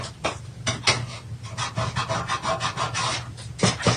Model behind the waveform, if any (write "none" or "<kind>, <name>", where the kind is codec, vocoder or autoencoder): none